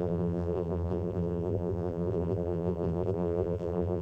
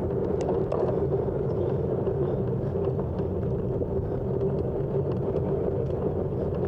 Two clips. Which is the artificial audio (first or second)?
first